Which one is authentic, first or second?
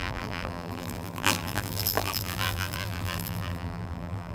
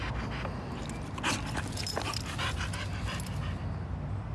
second